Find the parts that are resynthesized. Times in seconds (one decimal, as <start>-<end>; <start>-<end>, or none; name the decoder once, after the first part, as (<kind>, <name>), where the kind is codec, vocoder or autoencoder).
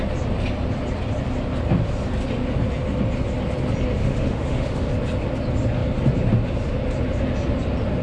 3.9-4.9 (autoencoder, DAC-VAE)